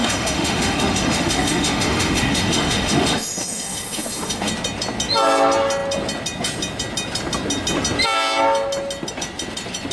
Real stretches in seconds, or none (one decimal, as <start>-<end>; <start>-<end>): 4.5-9.9